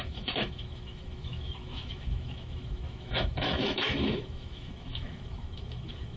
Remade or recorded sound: remade